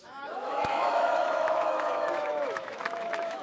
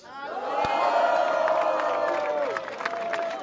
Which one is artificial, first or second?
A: first